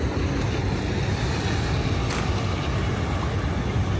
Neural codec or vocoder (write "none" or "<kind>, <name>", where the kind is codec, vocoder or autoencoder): none